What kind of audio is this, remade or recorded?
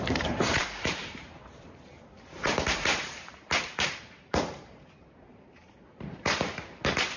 remade